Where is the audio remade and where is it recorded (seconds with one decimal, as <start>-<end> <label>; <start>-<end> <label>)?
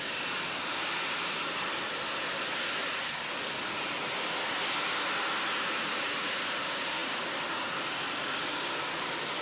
0.0-9.4 recorded